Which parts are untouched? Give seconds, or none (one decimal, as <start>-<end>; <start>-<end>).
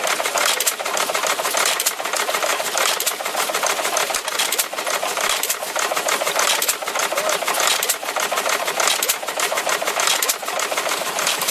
0.0-2.5; 5.6-11.5